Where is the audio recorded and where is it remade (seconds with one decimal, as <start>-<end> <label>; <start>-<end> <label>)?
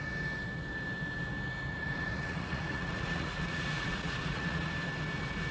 0.0-1.7 recorded; 1.7-4.7 remade; 4.7-5.5 recorded